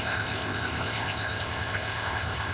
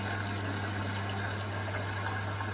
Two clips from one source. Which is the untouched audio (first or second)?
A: second